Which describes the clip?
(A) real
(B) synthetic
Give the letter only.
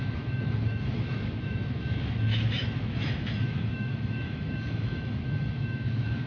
B